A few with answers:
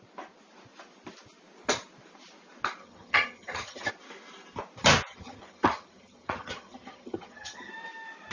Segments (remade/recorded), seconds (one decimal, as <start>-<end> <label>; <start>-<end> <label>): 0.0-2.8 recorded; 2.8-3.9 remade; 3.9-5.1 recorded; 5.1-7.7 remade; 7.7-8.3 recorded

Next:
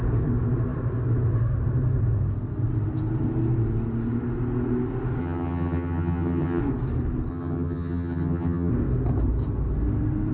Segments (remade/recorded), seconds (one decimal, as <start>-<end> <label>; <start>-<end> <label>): 0.0-5.2 recorded; 5.2-6.6 remade; 6.6-7.3 recorded; 7.3-8.7 remade; 8.7-10.3 recorded

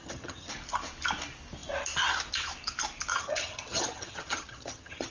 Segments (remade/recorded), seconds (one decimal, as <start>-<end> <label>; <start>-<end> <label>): 0.0-0.5 remade; 0.5-3.1 recorded; 3.1-5.1 remade